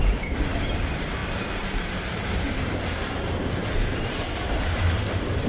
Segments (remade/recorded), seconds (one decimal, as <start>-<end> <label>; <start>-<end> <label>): 0.0-5.5 remade